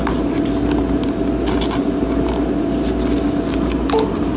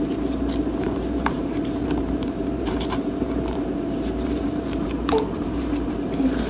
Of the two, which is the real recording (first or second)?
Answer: first